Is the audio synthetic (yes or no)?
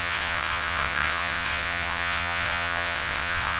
yes